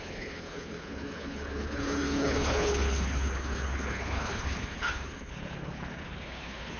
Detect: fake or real fake